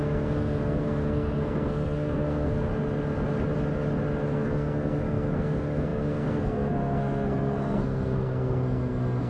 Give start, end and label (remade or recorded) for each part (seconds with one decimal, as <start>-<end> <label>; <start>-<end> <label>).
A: 0.0-2.7 remade; 2.7-4.2 recorded; 4.2-9.3 remade